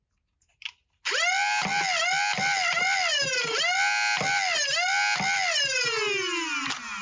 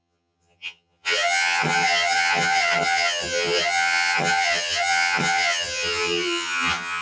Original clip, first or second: first